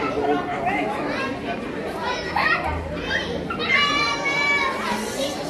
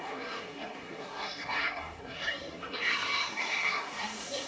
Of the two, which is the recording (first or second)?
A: first